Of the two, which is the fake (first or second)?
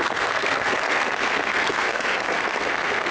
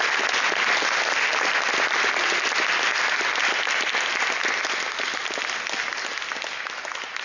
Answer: first